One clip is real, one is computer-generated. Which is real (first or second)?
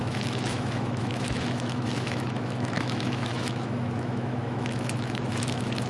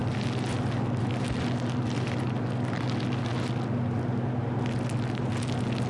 second